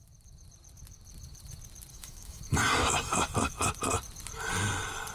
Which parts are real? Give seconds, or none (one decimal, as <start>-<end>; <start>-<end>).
0.0-1.9; 2.4-5.1